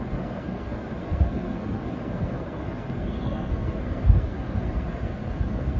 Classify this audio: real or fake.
fake